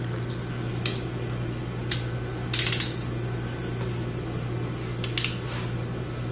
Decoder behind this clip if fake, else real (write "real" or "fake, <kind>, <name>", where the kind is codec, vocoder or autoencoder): real